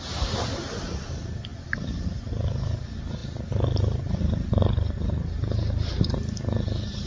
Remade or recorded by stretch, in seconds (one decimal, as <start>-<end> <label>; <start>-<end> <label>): 0.0-7.1 recorded